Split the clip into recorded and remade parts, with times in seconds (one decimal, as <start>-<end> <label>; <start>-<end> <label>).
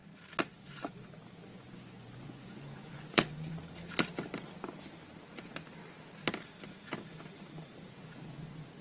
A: 0.0-1.5 recorded; 1.5-3.6 remade; 3.6-8.8 recorded